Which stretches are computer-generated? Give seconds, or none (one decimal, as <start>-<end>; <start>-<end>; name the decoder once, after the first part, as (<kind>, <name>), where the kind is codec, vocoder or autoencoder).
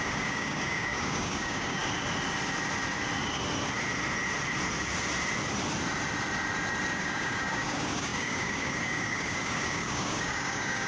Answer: 0.0-1.8 (codec, DAC); 7.0-10.9